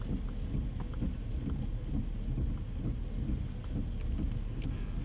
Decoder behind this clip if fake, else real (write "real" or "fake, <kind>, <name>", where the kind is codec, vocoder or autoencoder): real